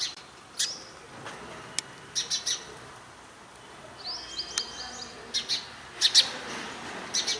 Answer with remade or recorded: recorded